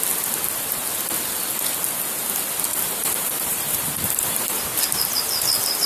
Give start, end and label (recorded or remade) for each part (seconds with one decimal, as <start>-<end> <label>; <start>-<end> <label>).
0.0-2.7 recorded; 2.7-4.8 remade; 4.8-5.9 recorded